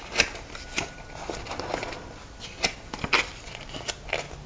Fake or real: real